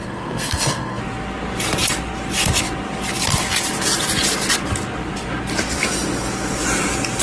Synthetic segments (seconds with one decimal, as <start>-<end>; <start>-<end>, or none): 0.0-1.0